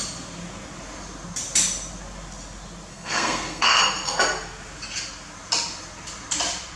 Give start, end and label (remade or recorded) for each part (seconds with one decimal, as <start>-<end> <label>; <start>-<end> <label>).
0.0-2.9 recorded; 2.9-3.8 remade; 3.8-6.8 recorded